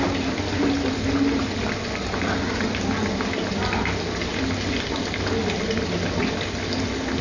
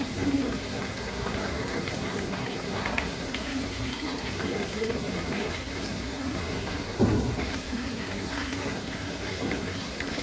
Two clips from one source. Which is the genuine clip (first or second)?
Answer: first